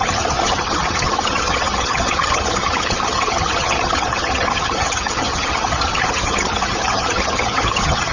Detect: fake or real fake